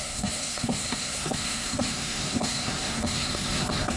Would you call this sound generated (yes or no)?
yes